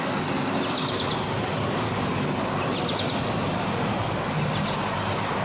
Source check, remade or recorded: recorded